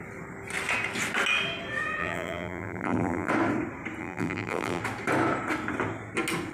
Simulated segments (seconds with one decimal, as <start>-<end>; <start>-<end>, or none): 2.0-3.3; 4.0-4.8